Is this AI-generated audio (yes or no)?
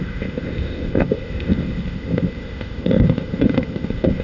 yes